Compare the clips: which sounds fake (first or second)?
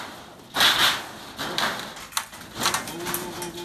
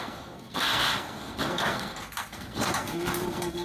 second